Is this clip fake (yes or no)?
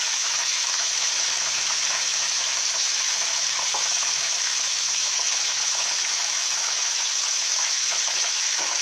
yes